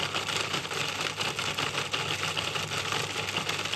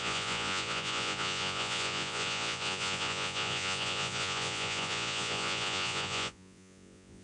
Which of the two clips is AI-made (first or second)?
second